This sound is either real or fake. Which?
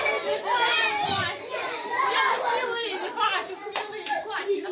real